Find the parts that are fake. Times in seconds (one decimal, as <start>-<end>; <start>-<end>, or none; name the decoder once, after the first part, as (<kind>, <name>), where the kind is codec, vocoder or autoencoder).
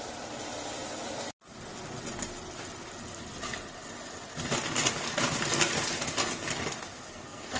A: 6.9-7.6 (codec, SNAC)